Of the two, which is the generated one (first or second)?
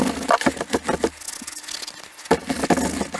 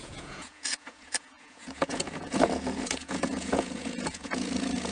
second